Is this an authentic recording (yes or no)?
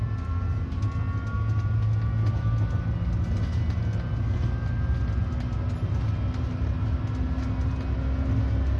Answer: yes